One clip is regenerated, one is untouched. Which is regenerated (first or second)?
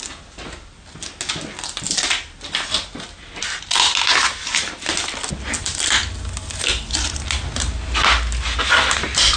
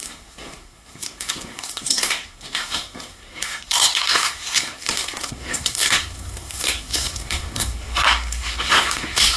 second